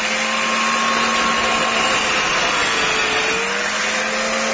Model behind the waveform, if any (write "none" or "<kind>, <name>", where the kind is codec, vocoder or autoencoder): none